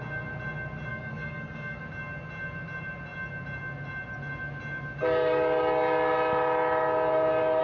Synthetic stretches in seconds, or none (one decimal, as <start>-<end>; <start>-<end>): 0.9-1.8